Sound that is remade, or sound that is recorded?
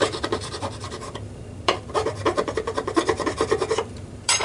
remade